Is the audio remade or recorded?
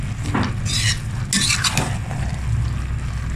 recorded